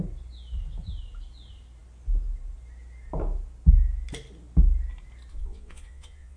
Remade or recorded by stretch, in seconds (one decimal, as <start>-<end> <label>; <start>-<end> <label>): 0.0-5.3 recorded; 5.3-6.4 remade